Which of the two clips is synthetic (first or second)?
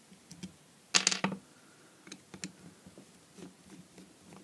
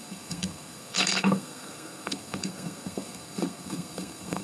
second